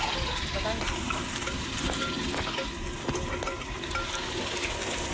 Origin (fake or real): real